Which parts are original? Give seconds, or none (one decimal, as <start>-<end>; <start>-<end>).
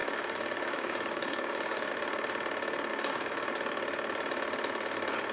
1.9-2.9; 3.5-5.3